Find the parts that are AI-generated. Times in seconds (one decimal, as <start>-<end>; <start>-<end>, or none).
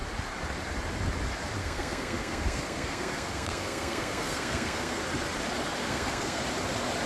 1.6-5.0; 5.8-6.4